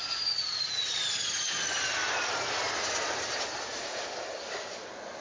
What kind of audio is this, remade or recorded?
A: recorded